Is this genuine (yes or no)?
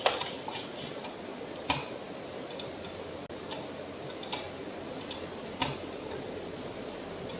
yes